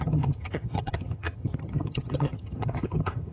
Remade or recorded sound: remade